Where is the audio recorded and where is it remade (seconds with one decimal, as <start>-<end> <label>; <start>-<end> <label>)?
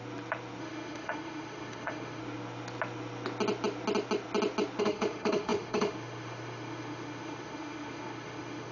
0.0-0.6 recorded; 0.6-2.2 remade; 2.2-4.8 recorded; 4.8-8.7 remade